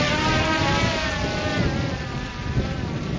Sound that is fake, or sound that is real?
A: real